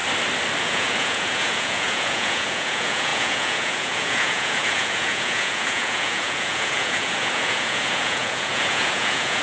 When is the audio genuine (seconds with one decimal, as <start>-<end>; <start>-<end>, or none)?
0.0-0.6